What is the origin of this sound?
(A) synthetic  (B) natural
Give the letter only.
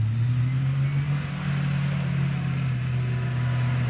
B